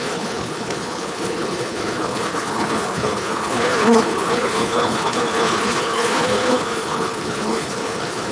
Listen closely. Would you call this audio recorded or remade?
remade